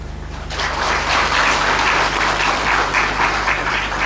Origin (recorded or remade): remade